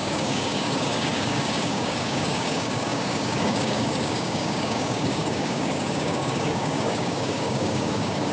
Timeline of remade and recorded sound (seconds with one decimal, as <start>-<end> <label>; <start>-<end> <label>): 0.0-8.3 remade